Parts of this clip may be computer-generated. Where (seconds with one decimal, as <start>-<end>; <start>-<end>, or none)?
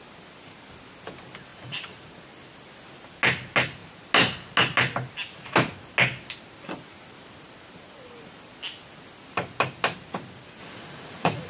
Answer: 1.5-2.1; 10.6-11.5